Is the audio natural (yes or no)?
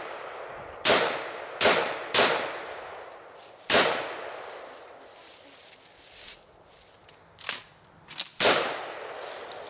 yes